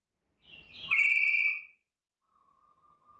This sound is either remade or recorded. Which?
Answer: recorded